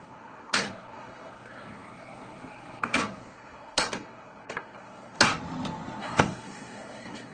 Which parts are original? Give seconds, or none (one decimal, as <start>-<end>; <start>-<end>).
5.3-6.0